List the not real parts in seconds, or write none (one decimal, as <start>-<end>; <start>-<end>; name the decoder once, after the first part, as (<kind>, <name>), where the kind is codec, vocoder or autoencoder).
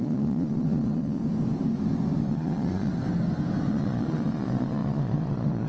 0.0-1.2 (vocoder, Vocos); 2.3-2.9; 3.7-5.7